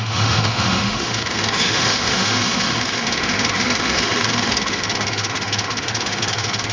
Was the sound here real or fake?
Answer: fake